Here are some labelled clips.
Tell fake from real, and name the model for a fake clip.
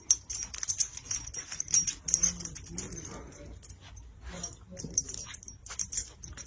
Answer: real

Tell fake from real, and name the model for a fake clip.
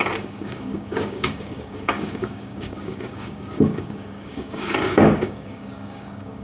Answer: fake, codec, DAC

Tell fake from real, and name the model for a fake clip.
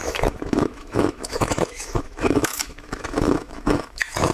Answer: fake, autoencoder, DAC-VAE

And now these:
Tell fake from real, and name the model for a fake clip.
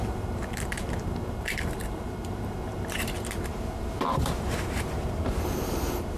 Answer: fake, vocoder, BigVGAN v2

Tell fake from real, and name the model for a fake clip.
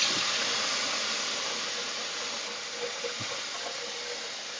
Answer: real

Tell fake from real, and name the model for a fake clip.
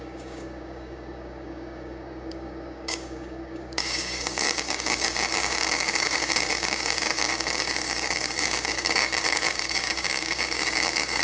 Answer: fake, codec, DAC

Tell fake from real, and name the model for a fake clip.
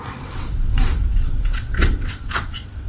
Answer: fake, vocoder, WaveNeXt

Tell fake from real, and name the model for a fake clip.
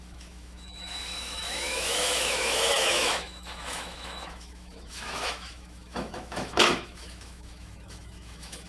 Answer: fake, autoencoder, DAC-VAE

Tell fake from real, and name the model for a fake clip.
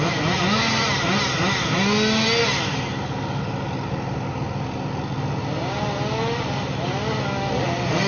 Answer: real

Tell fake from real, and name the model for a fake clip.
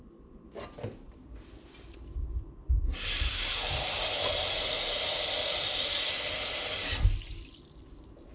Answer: real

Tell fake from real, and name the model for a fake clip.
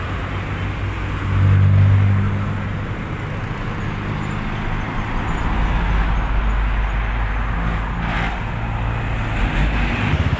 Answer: real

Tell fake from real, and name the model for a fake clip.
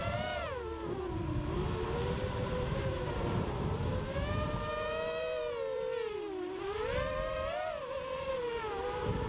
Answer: fake, vocoder, BigVGAN v2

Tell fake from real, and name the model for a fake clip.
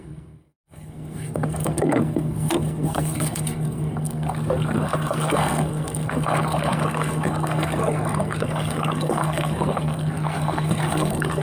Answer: fake, codec, SNAC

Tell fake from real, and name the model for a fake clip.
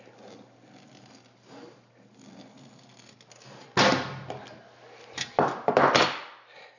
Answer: real